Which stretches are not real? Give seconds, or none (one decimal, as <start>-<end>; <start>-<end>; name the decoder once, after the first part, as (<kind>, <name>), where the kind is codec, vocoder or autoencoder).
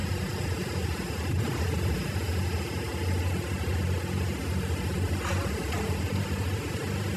none